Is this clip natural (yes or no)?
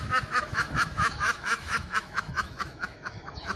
no